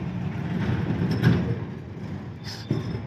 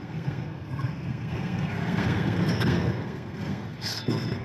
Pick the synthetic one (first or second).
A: second